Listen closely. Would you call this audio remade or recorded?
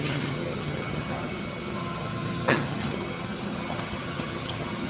remade